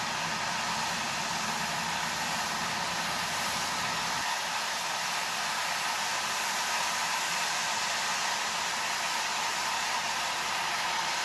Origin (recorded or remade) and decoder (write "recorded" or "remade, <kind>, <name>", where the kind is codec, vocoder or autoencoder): recorded